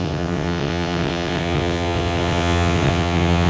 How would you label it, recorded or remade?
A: remade